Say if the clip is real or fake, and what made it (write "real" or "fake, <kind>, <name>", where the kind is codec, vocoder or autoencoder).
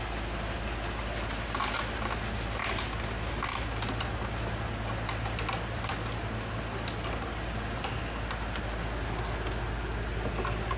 real